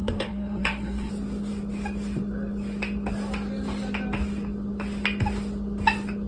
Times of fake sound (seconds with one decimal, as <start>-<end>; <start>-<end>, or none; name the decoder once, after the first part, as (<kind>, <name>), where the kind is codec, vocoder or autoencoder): 0.0-1.1 (codec, SNAC)